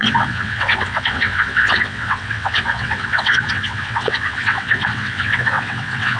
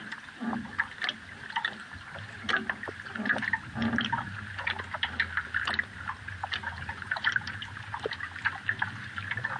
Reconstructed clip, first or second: first